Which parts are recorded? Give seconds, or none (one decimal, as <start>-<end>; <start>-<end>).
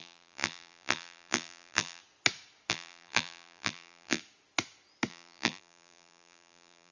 2.0-2.7; 4.2-5.1